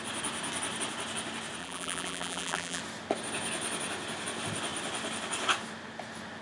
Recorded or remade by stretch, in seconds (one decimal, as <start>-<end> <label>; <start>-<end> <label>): 0.0-1.6 recorded; 1.6-2.8 remade; 2.8-6.4 recorded